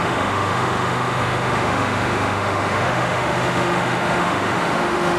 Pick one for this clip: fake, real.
fake